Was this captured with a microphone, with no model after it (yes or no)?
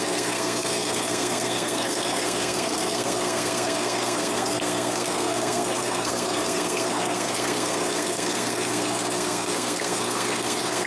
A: no